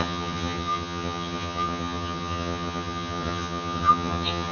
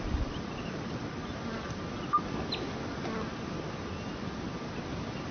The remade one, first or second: first